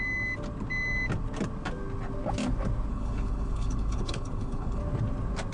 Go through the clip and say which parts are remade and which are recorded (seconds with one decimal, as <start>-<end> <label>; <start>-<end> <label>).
0.0-2.9 recorded; 2.9-4.8 remade; 4.8-5.5 recorded